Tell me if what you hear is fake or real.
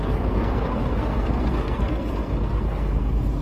fake